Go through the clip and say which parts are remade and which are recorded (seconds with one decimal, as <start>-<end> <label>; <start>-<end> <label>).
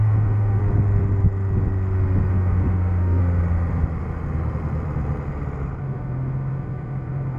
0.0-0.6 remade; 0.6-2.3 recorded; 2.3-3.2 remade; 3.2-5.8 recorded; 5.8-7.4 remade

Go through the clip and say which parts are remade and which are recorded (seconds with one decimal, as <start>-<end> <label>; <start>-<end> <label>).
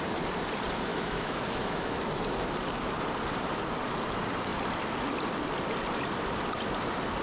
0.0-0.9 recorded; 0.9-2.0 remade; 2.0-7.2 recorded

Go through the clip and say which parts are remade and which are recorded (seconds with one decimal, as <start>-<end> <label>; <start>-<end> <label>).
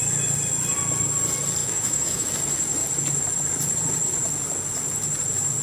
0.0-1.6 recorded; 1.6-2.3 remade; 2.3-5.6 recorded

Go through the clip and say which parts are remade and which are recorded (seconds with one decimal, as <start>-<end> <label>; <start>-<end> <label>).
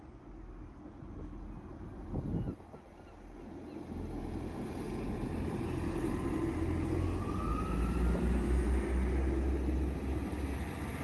0.0-11.0 recorded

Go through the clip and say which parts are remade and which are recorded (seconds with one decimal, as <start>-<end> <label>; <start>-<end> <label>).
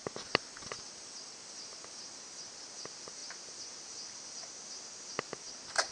0.0-5.9 recorded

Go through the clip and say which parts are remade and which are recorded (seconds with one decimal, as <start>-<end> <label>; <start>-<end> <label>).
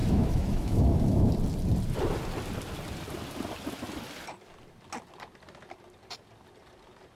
0.0-1.3 remade; 1.3-7.2 recorded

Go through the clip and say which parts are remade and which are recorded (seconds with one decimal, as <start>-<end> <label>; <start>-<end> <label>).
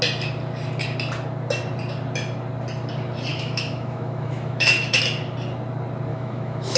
0.0-3.3 recorded; 3.3-5.0 remade; 5.0-6.1 recorded; 6.1-6.8 remade